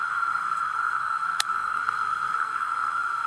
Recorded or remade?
remade